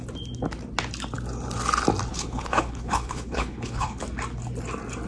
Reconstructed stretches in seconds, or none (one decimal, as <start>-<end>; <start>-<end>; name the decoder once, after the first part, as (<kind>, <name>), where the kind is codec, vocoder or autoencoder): 2.1-4.0 (codec, HILCodec)